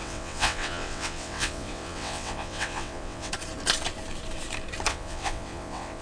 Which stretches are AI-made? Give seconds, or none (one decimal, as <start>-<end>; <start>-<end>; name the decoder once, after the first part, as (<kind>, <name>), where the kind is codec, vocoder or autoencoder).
0.0-3.3 (vocoder, WaveNeXt); 4.9-6.0